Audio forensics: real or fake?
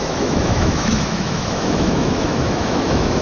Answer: fake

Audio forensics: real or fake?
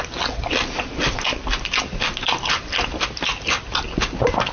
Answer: real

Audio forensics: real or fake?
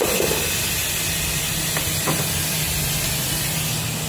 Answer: real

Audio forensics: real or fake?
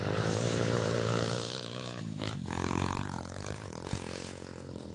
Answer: fake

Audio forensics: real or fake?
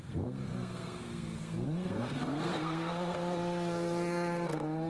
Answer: fake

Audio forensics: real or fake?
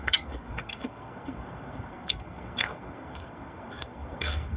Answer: fake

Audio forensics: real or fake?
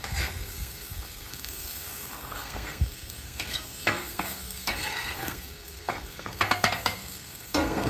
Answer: fake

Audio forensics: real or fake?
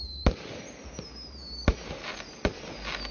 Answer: real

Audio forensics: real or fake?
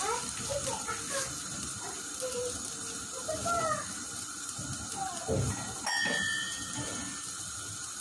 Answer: real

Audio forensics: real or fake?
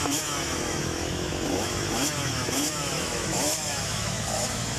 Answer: fake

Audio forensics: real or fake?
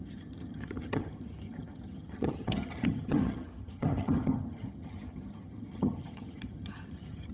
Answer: fake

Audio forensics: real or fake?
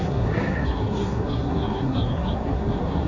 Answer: fake